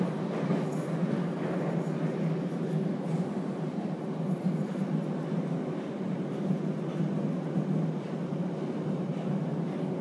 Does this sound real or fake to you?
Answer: real